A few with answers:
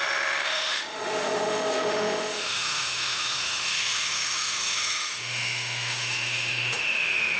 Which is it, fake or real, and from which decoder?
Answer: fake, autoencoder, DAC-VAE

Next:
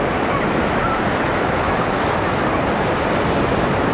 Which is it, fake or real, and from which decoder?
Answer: real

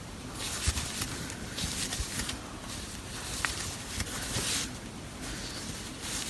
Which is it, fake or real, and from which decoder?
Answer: fake, vocoder, BigVGAN v2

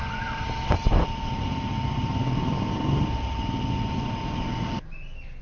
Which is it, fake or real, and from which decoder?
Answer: real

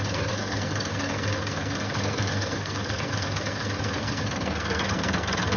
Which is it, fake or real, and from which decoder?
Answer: fake, codec, SNAC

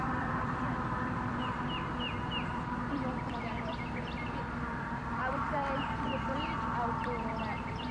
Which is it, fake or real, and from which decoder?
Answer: fake, vocoder, BigVGAN v2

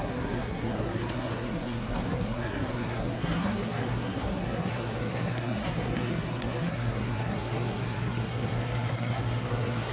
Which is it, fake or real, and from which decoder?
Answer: fake, codec, SNAC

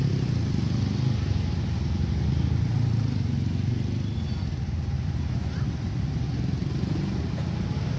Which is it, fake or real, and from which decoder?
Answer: real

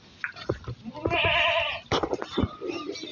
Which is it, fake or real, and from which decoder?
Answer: real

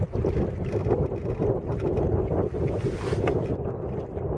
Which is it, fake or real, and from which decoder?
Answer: real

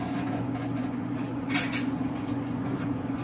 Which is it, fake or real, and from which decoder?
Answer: fake, vocoder, Vocos